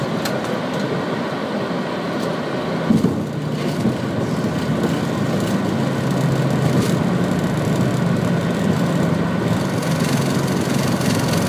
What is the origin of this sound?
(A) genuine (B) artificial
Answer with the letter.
A